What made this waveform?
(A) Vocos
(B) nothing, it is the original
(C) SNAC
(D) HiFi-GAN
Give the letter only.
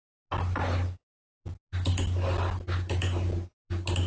B